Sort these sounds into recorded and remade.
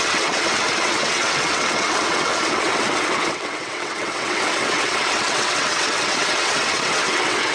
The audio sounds remade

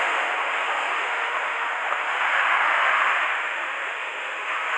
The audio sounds remade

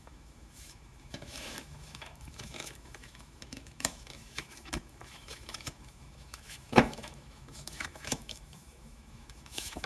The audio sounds remade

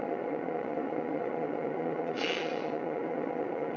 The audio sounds remade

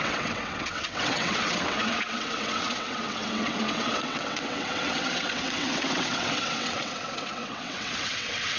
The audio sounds remade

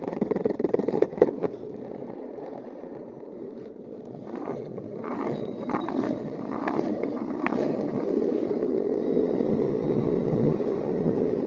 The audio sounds remade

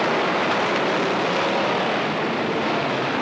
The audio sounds remade